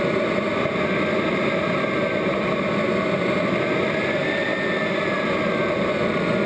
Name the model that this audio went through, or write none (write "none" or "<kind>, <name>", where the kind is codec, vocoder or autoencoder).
none